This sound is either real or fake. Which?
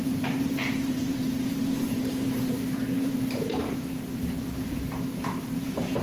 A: fake